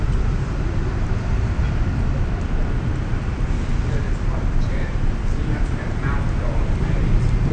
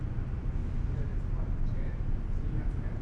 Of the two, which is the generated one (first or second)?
first